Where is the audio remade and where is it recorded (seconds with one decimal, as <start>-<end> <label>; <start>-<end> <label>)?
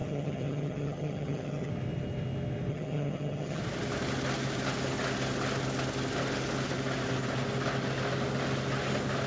0.0-1.7 remade; 1.7-2.7 recorded; 2.7-3.6 remade; 3.6-9.3 recorded